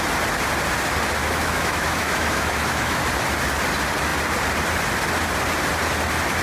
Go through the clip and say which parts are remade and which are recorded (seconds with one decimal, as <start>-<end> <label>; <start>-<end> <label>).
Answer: 0.0-1.2 recorded; 1.2-3.0 remade; 3.0-6.4 recorded